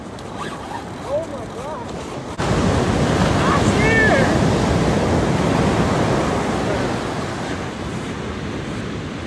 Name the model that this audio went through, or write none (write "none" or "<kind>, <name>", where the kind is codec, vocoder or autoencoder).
none